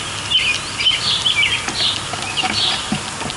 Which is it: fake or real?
real